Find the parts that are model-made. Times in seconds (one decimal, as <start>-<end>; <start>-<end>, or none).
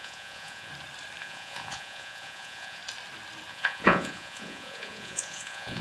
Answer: 0.0-0.7; 1.2-2.8; 3.5-5.8